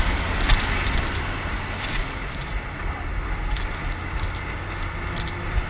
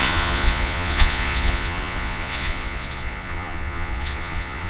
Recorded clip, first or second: first